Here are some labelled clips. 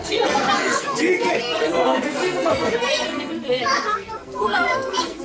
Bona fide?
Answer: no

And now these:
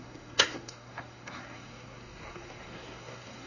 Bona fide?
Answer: no